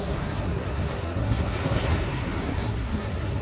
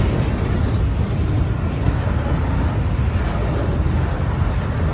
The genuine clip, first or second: second